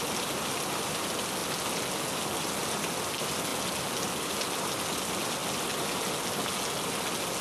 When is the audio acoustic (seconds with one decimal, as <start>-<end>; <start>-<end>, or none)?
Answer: 0.0-7.4